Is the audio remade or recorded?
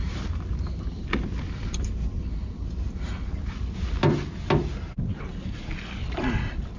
recorded